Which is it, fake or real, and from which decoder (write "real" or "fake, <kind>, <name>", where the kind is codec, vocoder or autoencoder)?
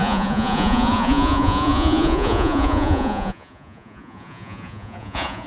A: fake, vocoder, Vocos